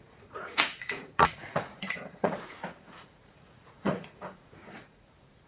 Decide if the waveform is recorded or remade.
remade